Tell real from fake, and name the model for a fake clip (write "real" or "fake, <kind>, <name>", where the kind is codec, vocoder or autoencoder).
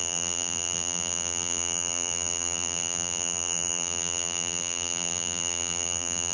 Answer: fake, vocoder, BigVGAN v2